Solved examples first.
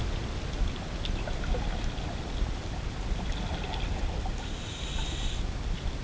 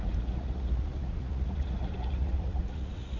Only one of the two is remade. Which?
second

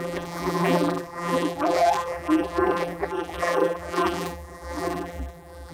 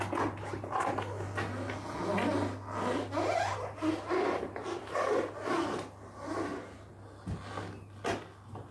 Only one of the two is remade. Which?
first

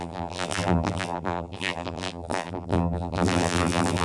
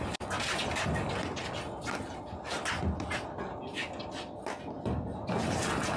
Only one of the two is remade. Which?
first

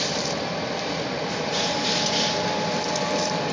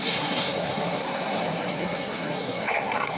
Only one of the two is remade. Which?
second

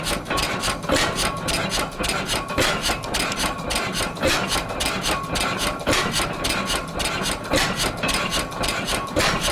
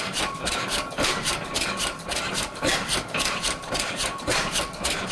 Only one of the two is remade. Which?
second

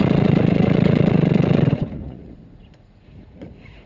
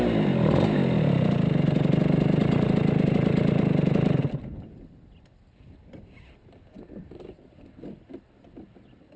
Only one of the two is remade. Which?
first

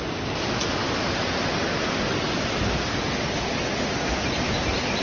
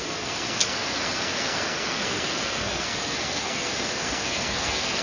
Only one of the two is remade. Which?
second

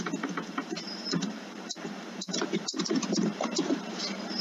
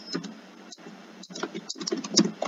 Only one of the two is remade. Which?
first